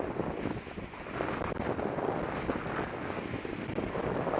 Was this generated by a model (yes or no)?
no